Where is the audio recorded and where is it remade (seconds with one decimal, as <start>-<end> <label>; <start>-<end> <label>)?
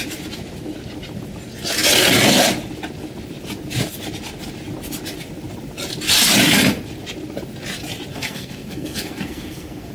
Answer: 0.0-8.1 recorded; 8.1-9.9 remade